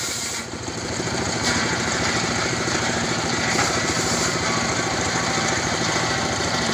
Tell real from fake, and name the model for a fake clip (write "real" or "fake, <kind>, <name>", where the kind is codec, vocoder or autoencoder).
fake, vocoder, BigVGAN v2